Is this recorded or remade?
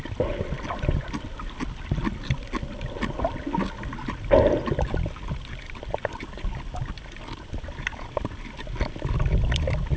recorded